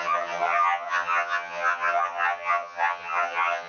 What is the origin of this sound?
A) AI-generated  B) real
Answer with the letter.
A